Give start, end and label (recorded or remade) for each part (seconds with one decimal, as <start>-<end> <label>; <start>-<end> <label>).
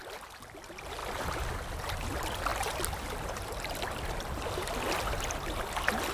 0.0-1.0 remade; 1.0-2.1 recorded; 2.1-6.1 remade